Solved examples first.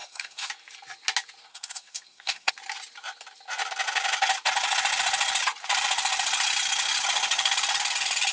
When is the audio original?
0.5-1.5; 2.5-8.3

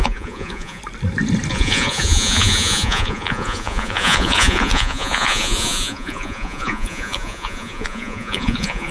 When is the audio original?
0.8-1.5

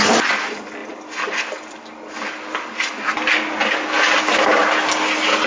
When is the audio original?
0.0-5.5

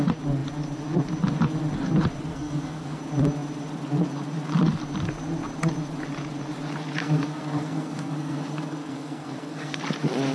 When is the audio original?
0.0-2.3; 3.0-7.0; 9.8-10.3

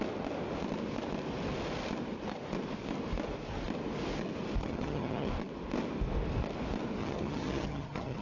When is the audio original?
0.0-4.6; 5.3-7.0

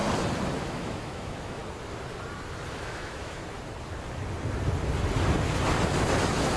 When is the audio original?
0.0-0.6; 1.6-2.7; 3.4-6.6